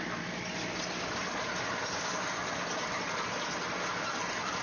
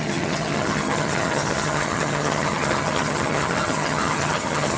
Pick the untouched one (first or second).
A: first